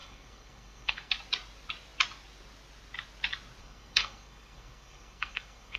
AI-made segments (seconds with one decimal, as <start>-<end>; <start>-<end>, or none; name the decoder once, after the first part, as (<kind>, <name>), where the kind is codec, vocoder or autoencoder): 0.0-1.1 (codec, SNAC); 3.6-5.8